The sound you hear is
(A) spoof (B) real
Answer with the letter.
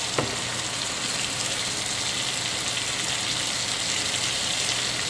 B